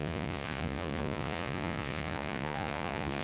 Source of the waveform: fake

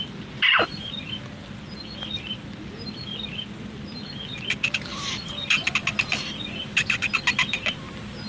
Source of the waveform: real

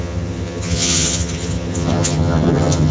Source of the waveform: fake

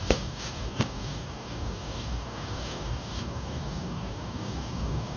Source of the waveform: fake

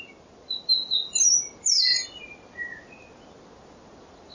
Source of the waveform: real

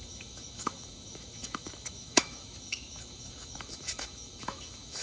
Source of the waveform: fake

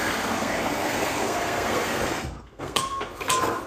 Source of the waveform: fake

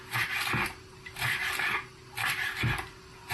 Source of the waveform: real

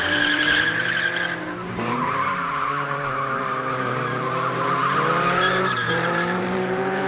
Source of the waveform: fake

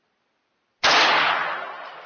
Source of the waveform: real